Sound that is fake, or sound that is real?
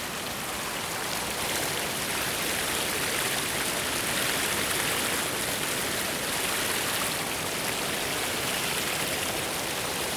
real